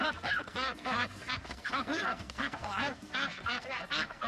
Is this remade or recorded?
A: remade